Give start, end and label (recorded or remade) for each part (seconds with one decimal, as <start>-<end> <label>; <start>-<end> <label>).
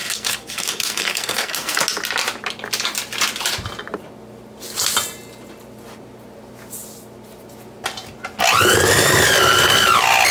0.0-1.8 remade; 1.8-10.3 recorded